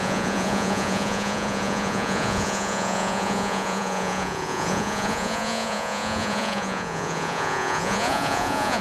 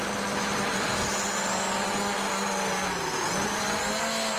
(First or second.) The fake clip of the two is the first